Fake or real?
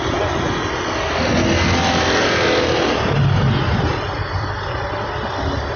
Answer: real